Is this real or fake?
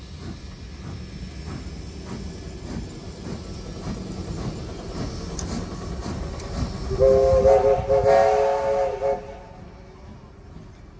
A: real